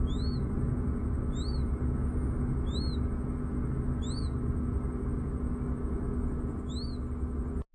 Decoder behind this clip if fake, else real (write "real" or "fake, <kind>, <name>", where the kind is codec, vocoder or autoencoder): real